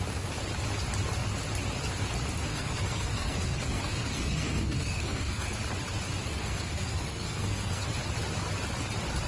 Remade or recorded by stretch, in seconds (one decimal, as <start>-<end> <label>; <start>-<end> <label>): 0.0-2.5 recorded; 2.5-5.6 remade; 5.6-6.3 recorded; 6.3-7.9 remade; 7.9-9.3 recorded